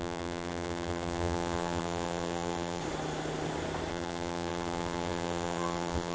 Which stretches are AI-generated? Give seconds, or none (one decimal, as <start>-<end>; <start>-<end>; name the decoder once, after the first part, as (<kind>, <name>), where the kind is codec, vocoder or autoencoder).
0.0-2.8 (vocoder, BigVGAN v2); 3.9-6.1